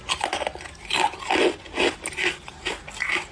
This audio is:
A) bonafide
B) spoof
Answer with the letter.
A